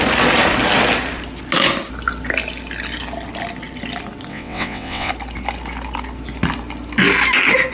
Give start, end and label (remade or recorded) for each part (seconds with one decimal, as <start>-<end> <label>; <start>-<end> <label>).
0.0-4.3 recorded; 4.3-5.1 remade; 5.1-7.7 recorded